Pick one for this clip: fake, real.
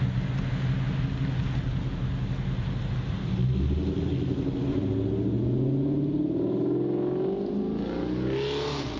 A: real